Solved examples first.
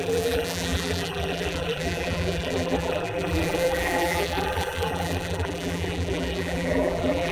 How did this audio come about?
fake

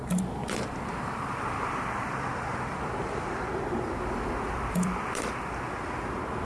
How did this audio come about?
fake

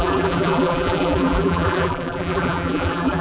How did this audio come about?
fake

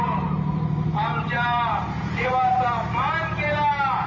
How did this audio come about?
fake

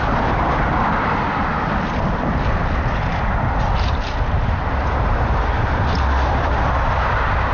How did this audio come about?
fake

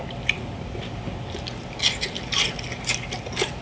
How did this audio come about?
real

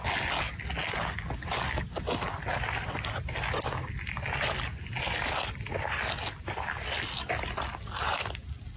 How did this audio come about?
real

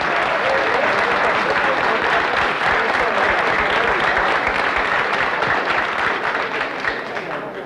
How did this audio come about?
real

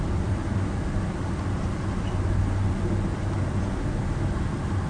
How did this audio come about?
fake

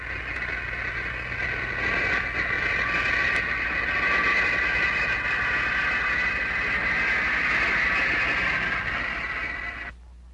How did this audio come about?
real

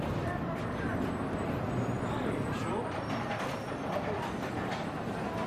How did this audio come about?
fake